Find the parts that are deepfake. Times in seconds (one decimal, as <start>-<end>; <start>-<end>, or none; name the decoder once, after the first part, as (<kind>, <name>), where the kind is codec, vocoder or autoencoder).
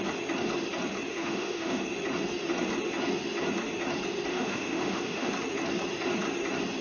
1.1-1.8 (autoencoder, DAC-VAE); 4.3-5.3